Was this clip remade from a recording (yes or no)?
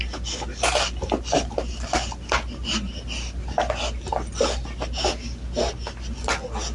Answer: no